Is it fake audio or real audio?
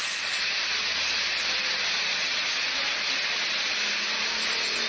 real